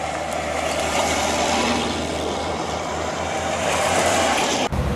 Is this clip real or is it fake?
fake